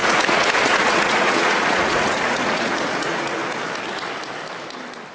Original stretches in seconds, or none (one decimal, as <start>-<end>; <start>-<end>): 3.4-5.1